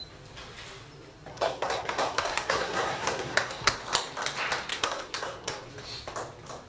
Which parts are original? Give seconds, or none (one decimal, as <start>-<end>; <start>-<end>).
0.0-1.3; 3.8-4.7; 5.7-6.7